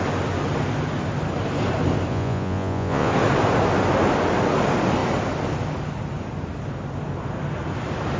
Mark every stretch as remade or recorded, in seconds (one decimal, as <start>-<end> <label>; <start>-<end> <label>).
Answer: 0.0-2.1 recorded; 2.1-3.1 remade; 3.1-8.2 recorded